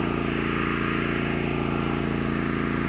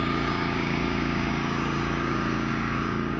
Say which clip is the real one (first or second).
first